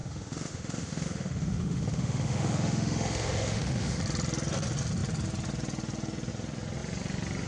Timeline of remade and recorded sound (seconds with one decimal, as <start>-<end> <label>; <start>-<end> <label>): 0.0-4.0 remade; 4.0-7.5 recorded